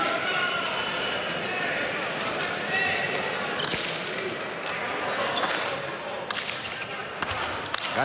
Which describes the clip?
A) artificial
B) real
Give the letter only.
B